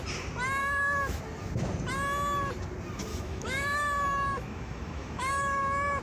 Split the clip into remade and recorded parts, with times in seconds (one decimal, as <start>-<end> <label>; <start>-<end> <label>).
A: 0.0-0.6 recorded; 0.6-1.2 remade; 1.2-3.1 recorded; 3.1-6.0 remade